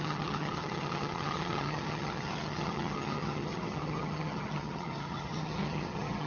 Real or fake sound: fake